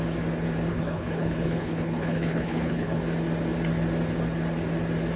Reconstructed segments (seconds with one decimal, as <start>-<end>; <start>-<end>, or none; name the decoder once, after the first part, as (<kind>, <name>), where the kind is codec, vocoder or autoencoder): 0.7-3.0 (codec, HILCodec)